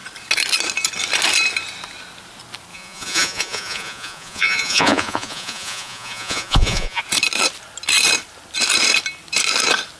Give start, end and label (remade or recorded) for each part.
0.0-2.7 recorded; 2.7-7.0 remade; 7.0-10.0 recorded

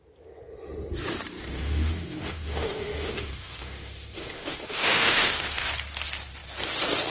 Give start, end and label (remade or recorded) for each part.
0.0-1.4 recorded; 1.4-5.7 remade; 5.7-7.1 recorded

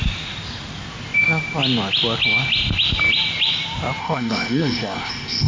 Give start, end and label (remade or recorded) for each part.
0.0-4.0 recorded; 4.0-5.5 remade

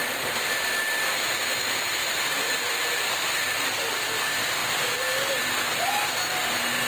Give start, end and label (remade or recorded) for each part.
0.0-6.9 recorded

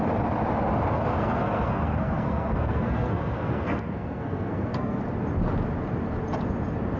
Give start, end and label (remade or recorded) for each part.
0.0-1.1 recorded; 1.1-5.0 remade; 5.0-7.0 recorded

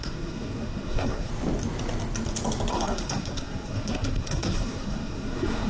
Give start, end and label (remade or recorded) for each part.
0.0-1.3 remade; 1.3-2.7 recorded; 2.7-5.7 remade

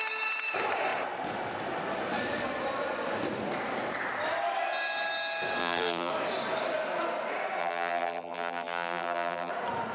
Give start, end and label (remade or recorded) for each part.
0.0-5.6 recorded; 5.6-6.1 remade; 6.1-7.6 recorded; 7.6-9.5 remade; 9.5-9.9 recorded

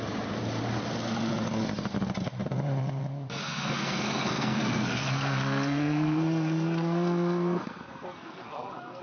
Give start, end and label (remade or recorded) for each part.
0.0-3.4 recorded; 3.4-9.0 remade